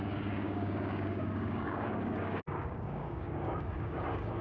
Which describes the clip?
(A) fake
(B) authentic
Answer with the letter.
A